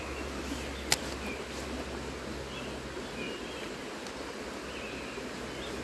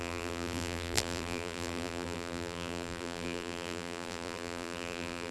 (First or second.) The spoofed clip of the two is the second